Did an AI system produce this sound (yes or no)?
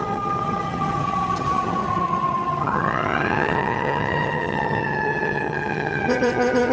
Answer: yes